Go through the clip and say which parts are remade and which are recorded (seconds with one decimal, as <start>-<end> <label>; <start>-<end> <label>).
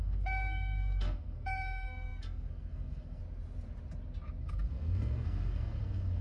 0.0-3.2 remade; 3.2-4.4 recorded; 4.4-6.2 remade